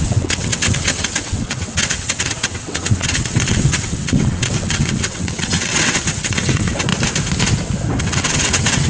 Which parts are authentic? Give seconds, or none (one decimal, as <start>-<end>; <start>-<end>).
6.9-8.0